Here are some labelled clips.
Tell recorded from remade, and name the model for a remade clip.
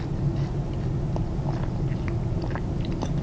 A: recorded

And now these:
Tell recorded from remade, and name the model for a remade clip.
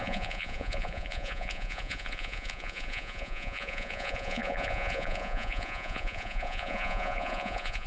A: remade, vocoder, Vocos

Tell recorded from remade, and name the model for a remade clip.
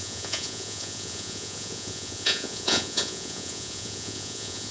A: remade, vocoder, Vocos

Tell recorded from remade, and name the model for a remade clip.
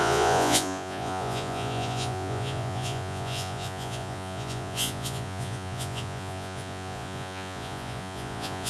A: remade, vocoder, Vocos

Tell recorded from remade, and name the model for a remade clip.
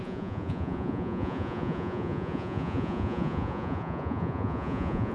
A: remade, vocoder, Vocos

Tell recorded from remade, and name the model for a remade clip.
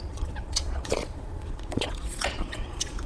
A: remade, vocoder, Vocos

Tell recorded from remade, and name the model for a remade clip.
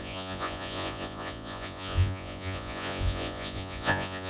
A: remade, vocoder, Vocos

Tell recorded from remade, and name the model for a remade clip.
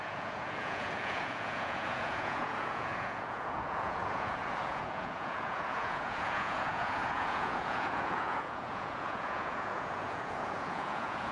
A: remade, vocoder, Vocos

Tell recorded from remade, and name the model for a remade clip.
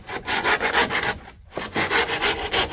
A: remade, vocoder, Vocos